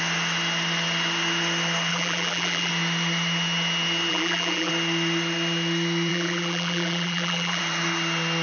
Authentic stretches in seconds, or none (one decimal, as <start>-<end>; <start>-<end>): 0.0-1.9; 2.7-4.1; 4.7-6.1; 7.6-8.4